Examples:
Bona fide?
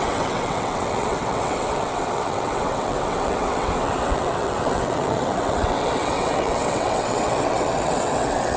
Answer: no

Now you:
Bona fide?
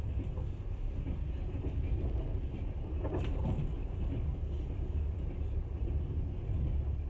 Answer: yes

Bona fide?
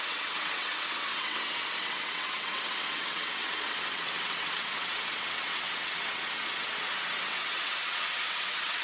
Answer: no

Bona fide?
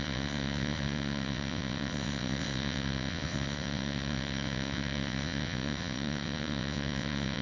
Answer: no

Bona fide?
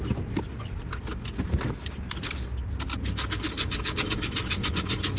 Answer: yes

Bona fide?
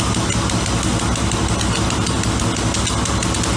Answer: yes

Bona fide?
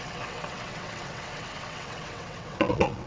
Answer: no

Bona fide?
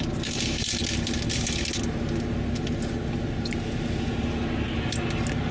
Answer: yes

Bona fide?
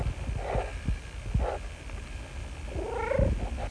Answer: yes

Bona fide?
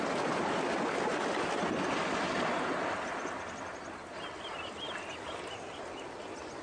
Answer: yes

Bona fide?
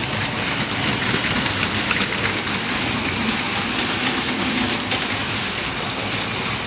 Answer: yes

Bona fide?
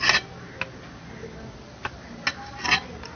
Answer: yes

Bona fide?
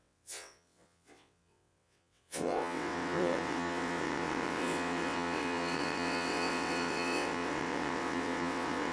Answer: no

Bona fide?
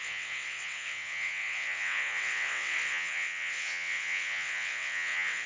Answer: no